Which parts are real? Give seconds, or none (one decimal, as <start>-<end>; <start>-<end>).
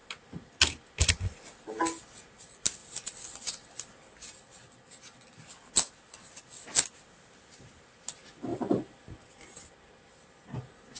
0.0-2.8; 3.5-8.5; 9.6-11.0